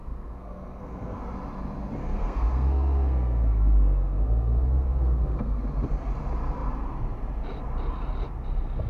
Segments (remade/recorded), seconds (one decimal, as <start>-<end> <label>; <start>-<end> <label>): 0.0-1.2 remade; 1.2-2.0 recorded; 2.0-5.6 remade; 5.6-8.9 recorded